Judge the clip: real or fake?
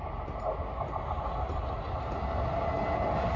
real